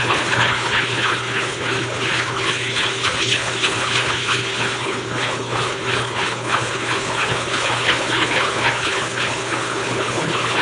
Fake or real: fake